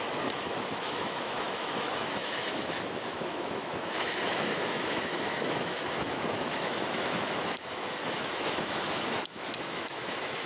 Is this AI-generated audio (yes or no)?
yes